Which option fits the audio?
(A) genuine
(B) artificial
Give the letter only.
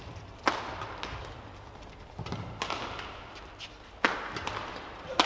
A